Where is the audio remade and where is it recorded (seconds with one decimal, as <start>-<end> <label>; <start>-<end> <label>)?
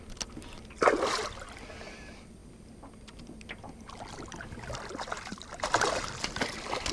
0.0-6.9 recorded